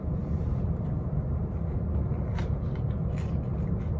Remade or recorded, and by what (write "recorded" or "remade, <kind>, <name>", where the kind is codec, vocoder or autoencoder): recorded